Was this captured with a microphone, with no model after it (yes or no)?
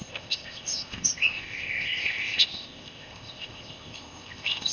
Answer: no